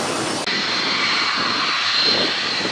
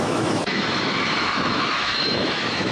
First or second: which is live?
first